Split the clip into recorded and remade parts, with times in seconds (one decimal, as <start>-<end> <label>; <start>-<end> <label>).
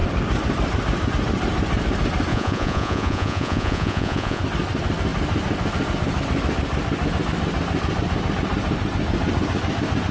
0.0-2.3 recorded; 2.3-4.4 remade; 4.4-10.1 recorded